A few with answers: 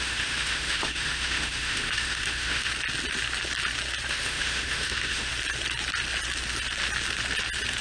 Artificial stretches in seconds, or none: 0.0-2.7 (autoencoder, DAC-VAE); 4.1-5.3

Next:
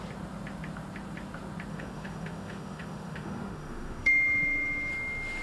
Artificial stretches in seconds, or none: 1.7-4.9 (autoencoder, DAC-VAE)

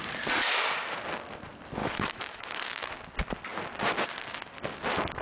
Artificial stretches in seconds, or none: 1.8-2.9 (autoencoder, DAC-VAE)

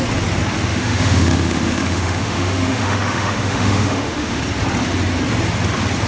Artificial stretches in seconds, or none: 0.7-4.4 (autoencoder, DAC-VAE)

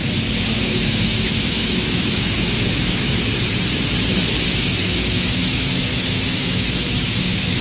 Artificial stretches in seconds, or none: 0.6-3.3 (autoencoder, DAC-VAE); 4.6-7.6

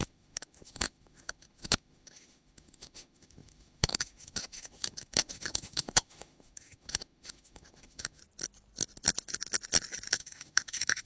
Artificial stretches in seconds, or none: 0.0-8.2 (autoencoder, DAC-VAE); 10.1-11.1

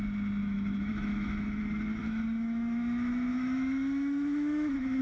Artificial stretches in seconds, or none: 0.4-1.6 (autoencoder, DAC-VAE); 2.0-5.0

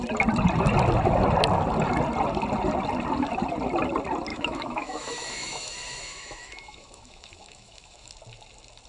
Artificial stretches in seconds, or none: 4.3-8.1 (autoencoder, DAC-VAE)